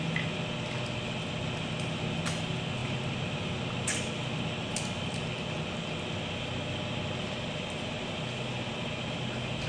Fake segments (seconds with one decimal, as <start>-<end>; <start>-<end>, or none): none